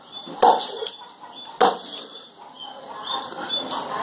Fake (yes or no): no